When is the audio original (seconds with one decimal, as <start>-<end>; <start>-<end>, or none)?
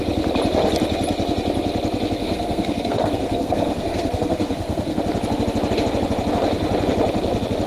0.0-2.2; 5.0-7.7